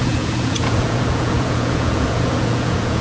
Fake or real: fake